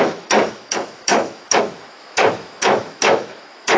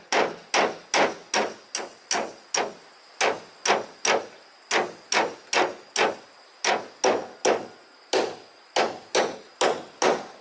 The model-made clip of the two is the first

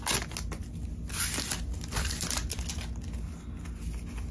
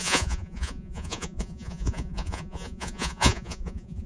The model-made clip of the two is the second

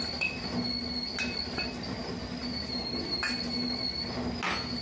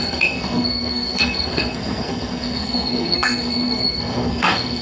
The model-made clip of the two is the second